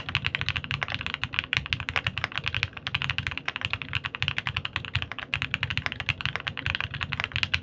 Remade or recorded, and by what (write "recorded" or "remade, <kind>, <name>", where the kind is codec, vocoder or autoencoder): recorded